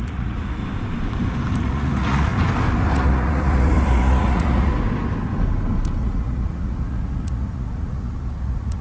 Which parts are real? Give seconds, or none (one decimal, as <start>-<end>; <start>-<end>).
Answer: 0.6-1.6; 2.3-2.9; 4.7-6.0